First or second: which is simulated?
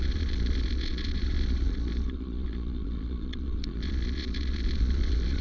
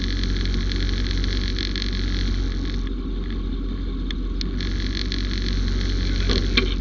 first